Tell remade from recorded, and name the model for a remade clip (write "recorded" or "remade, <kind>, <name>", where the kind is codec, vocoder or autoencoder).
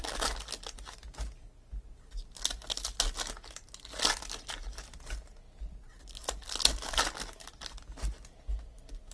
recorded